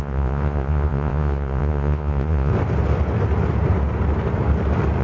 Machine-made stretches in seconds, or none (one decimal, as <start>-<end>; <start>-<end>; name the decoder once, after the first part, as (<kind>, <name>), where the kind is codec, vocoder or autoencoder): 0.0-2.5 (vocoder, Vocos)